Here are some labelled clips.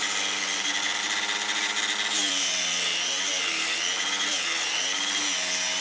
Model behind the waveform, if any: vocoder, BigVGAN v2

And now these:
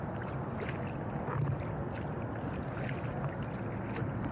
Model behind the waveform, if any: none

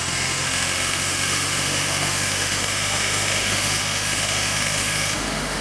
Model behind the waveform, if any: autoencoder, DAC-VAE